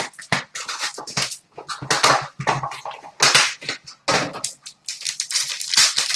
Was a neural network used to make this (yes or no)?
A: no